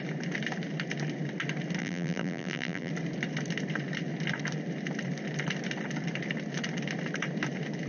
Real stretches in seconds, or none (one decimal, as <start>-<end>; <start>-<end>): 0.0-1.8; 2.9-7.9